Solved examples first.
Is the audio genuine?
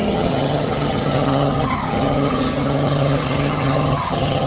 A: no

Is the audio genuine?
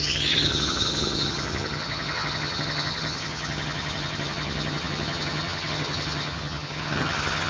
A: no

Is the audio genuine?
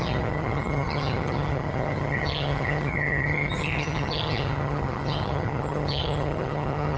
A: no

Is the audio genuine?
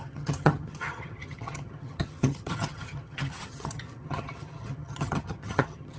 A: no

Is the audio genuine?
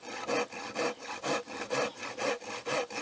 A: yes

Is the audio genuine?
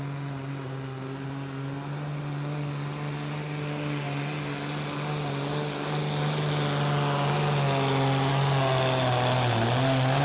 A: yes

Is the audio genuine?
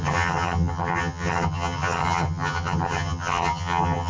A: no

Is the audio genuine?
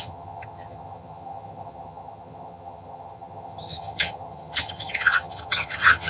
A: no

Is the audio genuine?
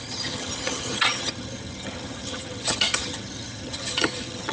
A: no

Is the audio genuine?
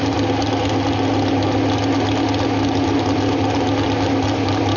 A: yes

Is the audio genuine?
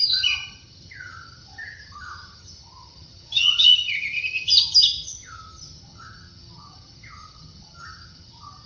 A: no